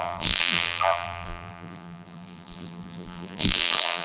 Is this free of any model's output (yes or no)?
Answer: no